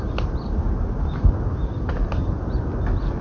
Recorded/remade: recorded